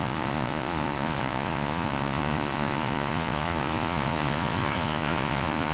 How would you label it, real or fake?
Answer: fake